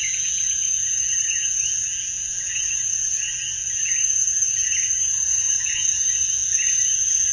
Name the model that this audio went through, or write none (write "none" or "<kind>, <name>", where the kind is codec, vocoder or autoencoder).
vocoder, Vocos